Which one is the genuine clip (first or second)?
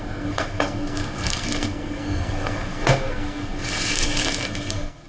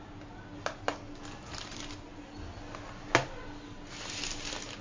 second